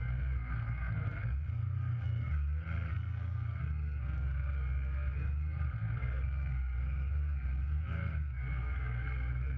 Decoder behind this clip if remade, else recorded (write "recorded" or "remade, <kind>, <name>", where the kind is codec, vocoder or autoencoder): remade, codec, SNAC